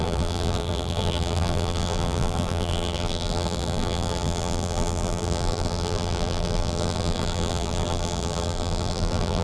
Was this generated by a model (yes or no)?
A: yes